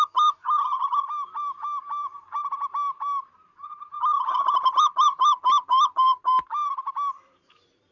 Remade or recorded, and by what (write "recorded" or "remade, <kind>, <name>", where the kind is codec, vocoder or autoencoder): remade, vocoder, BigVGAN v2